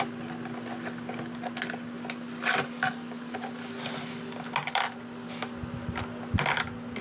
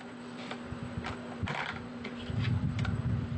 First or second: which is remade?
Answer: second